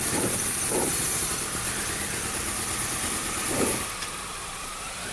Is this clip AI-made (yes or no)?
no